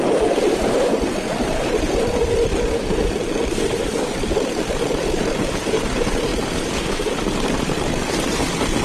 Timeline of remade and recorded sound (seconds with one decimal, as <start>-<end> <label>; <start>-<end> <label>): 0.0-8.8 recorded